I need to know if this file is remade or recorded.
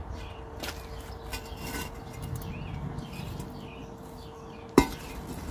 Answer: remade